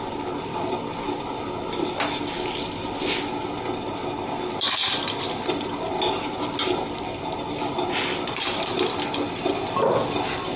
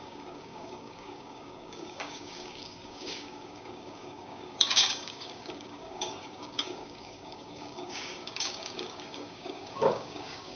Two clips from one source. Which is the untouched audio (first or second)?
first